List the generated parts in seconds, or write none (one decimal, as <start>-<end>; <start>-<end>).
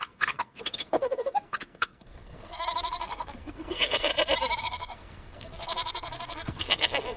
0.0-4.1; 4.6-7.2